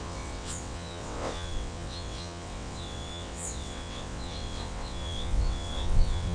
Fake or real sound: fake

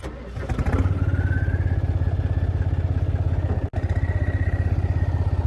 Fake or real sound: real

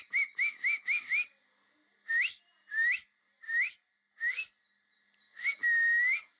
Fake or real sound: real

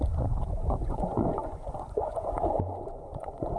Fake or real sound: fake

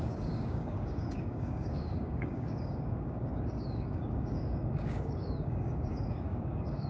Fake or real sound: fake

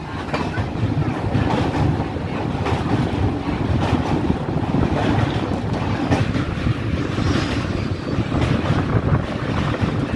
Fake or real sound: real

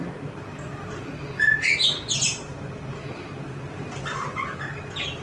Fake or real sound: real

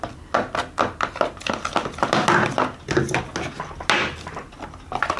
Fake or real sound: real